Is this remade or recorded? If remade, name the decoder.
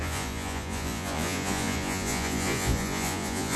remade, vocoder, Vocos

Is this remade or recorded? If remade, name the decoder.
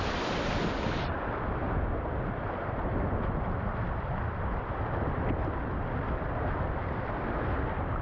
recorded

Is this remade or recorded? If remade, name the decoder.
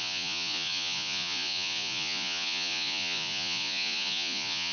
remade, vocoder, Vocos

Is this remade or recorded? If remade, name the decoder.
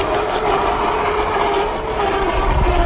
recorded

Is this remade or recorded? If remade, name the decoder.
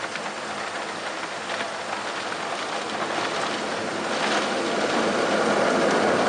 recorded